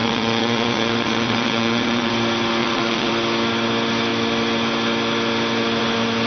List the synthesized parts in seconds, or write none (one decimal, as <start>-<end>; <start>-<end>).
0.0-2.1; 2.6-3.1